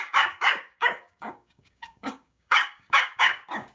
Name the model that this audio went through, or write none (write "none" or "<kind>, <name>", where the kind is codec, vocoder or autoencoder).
codec, DAC